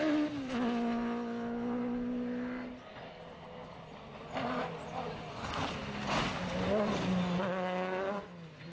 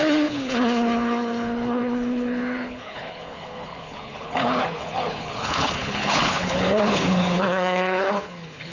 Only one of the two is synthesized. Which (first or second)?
second